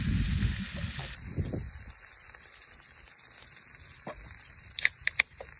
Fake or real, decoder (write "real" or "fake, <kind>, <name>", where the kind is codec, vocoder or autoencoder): real